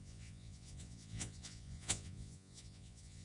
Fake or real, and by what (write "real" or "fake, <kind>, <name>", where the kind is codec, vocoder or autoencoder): fake, vocoder, Vocos